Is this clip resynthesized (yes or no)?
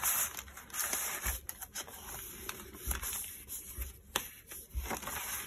no